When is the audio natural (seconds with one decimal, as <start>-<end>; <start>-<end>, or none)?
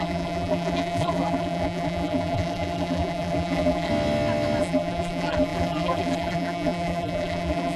3.9-4.6